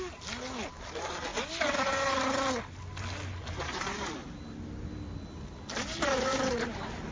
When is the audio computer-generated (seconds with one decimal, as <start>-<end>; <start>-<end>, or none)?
none